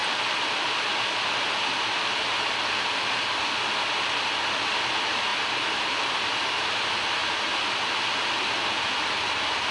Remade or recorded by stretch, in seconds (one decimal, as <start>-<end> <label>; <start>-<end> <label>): 0.0-5.3 recorded; 5.3-6.2 remade; 6.2-9.7 recorded